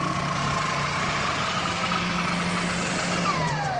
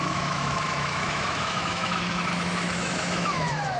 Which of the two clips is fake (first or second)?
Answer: second